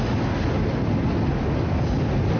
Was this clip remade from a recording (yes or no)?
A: no